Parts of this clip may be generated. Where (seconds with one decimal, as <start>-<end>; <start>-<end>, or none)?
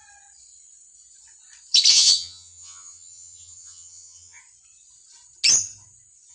1.9-4.4